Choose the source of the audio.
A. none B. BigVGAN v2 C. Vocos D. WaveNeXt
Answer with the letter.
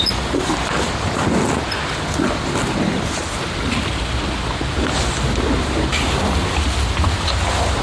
A